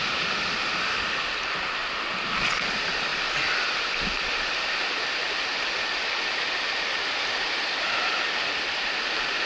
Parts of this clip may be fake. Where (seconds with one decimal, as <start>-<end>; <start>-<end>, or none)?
7.0-7.6